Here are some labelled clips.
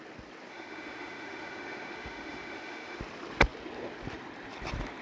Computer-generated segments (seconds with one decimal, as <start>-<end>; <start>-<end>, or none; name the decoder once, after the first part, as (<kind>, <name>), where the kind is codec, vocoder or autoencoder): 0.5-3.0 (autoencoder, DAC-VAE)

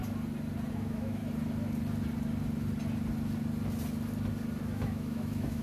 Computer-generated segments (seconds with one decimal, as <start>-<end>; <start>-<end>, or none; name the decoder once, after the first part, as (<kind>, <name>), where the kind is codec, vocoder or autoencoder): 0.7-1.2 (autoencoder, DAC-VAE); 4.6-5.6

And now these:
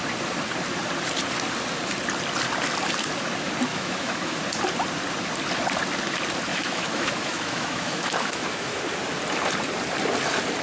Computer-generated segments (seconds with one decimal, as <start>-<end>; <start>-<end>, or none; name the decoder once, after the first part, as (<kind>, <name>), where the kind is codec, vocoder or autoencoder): 3.7-4.4 (autoencoder, DAC-VAE); 6.5-8.8

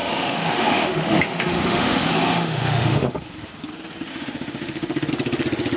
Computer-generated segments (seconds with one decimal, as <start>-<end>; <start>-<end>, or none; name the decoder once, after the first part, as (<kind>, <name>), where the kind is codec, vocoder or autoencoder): 0.0-3.5 (autoencoder, DAC-VAE); 4.1-5.1